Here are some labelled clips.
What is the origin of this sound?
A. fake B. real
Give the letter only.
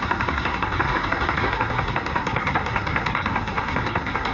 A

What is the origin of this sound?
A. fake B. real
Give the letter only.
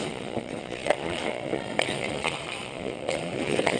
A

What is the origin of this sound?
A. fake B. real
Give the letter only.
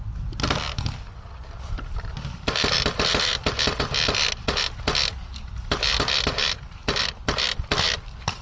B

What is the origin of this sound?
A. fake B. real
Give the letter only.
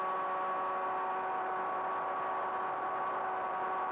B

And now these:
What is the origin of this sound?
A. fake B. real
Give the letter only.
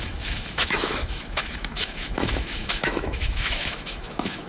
A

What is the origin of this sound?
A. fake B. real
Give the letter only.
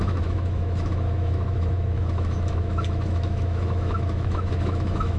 A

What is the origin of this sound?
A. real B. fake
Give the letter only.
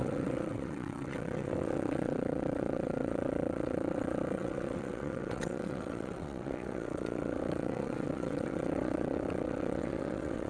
B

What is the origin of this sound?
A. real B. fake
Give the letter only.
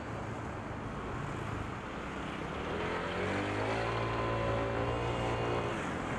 A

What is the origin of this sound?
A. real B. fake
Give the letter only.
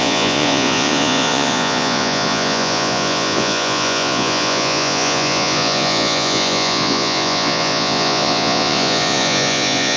B